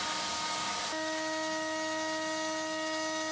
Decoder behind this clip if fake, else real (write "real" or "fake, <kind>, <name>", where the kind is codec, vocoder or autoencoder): real